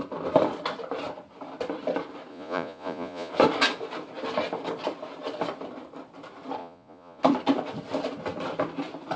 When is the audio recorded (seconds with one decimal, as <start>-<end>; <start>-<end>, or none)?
0.0-2.3; 3.3-6.6; 7.2-9.2